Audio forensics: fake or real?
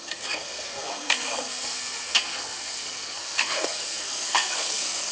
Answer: fake